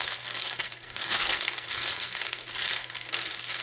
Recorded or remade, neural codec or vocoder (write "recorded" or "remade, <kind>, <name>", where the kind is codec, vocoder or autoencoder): remade, codec, SNAC